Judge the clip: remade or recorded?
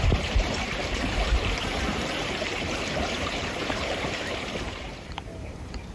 remade